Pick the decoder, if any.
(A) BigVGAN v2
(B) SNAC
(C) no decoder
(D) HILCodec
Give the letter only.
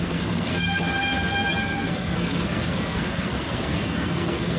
B